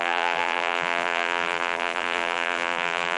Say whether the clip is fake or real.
fake